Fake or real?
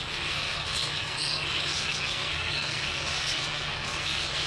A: fake